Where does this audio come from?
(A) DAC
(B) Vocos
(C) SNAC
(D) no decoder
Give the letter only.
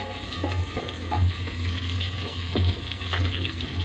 C